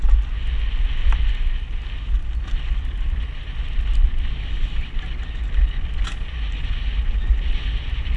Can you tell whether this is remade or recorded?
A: recorded